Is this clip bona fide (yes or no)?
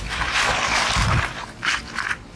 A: yes